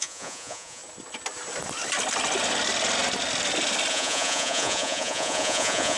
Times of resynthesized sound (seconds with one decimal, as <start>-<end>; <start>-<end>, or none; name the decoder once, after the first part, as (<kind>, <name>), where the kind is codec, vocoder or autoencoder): 0.0-0.8 (vocoder, Vocos); 3.9-6.0